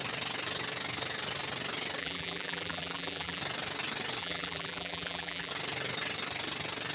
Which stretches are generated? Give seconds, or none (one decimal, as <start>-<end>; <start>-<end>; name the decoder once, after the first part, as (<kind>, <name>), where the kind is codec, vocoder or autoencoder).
2.0-3.4 (vocoder, BigVGAN v2); 4.2-5.5